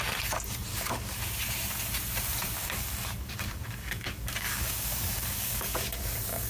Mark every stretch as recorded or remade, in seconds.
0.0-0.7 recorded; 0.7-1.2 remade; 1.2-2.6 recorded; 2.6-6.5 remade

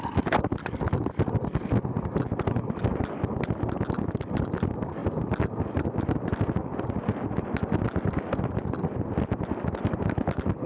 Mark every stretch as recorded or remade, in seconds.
0.0-10.7 recorded

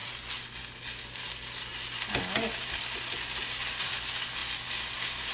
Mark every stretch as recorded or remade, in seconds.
0.0-5.3 recorded